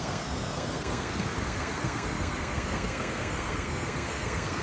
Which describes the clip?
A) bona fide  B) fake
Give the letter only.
B